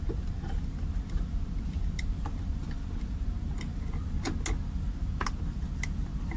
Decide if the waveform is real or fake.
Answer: real